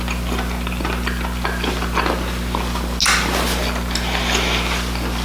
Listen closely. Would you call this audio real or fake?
real